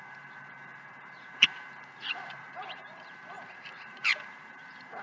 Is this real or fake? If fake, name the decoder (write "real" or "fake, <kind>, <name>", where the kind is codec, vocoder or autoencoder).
fake, vocoder, BigVGAN v2